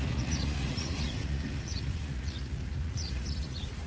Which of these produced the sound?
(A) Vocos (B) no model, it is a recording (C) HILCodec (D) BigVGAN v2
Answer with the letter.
A